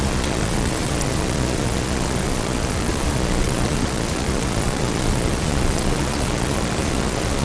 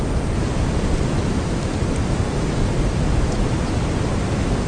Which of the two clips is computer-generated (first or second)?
first